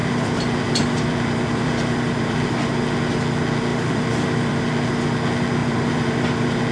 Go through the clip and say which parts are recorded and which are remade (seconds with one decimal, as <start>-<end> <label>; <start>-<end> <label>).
0.0-2.5 remade; 2.5-3.7 recorded; 3.7-4.6 remade; 4.6-5.6 recorded; 5.6-6.7 remade